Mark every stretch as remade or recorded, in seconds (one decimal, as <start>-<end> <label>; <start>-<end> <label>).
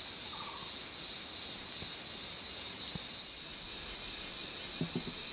0.0-5.3 recorded